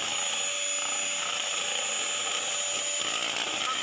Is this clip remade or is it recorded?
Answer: recorded